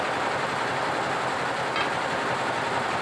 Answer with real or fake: real